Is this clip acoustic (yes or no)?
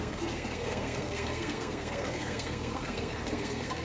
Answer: no